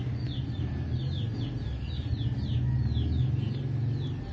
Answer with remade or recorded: recorded